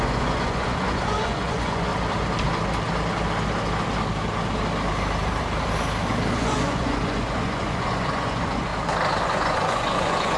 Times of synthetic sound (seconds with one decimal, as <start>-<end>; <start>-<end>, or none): 0.0-1.9; 6.3-8.7; 9.2-10.4